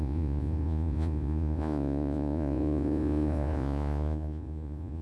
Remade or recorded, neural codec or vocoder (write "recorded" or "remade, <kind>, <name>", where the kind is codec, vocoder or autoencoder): remade, vocoder, Vocos